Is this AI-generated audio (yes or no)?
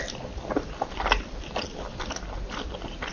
no